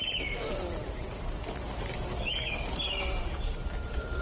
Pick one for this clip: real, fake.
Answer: fake